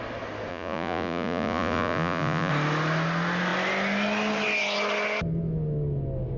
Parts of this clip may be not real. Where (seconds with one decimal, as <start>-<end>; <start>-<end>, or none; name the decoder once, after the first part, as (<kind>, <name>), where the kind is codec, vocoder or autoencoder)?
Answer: 0.5-2.5 (vocoder, Vocos)